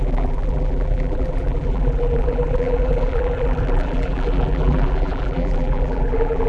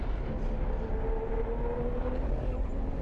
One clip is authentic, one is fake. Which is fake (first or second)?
first